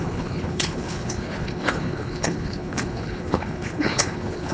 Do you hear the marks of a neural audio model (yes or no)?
yes